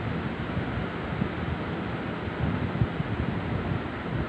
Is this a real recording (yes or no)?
yes